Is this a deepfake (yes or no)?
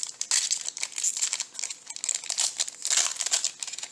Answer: no